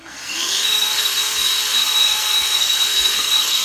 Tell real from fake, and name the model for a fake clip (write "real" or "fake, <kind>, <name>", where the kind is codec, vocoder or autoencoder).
fake, codec, SNAC